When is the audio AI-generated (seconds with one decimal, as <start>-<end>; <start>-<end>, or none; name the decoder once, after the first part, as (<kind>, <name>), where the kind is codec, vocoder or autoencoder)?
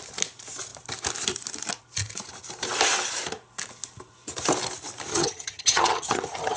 5.1-6.6 (vocoder, HiFi-GAN)